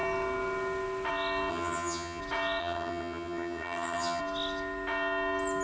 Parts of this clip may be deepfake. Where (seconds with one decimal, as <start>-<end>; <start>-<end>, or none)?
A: 1.5-2.2; 2.6-4.2